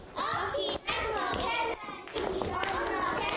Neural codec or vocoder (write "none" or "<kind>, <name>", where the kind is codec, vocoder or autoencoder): none